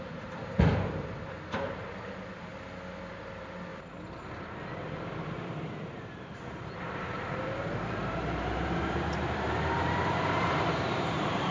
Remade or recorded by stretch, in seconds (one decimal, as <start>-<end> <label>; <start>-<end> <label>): 0.0-2.5 remade; 2.5-3.1 recorded; 3.1-3.7 remade; 3.7-4.4 recorded; 4.4-11.5 remade